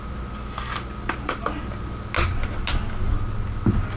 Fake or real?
real